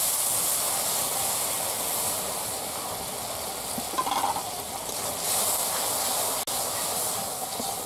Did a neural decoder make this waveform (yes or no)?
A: no